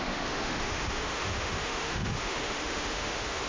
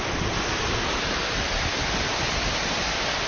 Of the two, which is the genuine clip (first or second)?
second